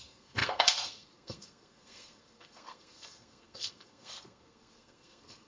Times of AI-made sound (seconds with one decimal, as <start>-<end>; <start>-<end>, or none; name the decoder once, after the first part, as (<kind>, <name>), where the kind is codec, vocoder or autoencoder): 0.0-5.5 (codec, SNAC)